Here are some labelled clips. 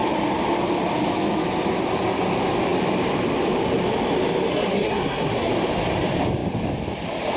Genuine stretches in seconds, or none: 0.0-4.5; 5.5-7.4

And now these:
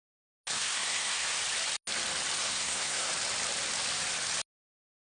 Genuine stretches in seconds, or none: 0.0-0.5; 1.4-2.4; 3.1-5.1